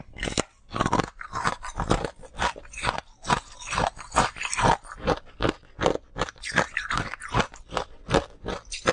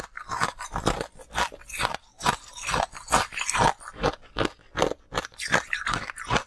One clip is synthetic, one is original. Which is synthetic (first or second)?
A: first